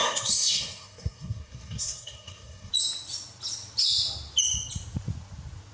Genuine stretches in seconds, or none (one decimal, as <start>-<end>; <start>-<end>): 2.7-5.7